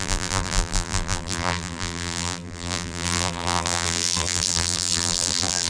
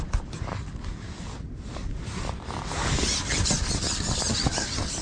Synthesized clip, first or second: first